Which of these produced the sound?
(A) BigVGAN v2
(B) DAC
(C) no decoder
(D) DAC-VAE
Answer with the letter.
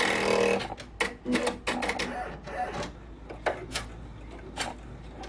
C